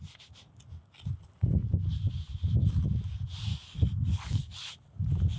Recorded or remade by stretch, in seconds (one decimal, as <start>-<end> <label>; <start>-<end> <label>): 0.0-3.5 recorded; 3.5-4.7 remade; 4.7-5.4 recorded